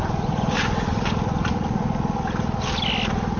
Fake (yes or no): no